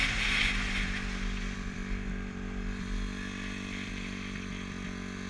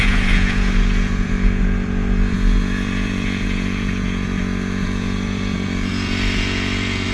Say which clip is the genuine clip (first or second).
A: first